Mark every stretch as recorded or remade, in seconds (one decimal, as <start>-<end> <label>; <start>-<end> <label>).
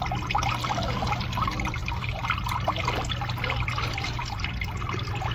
0.0-5.3 recorded